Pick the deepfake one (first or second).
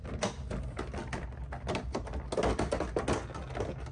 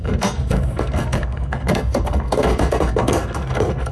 second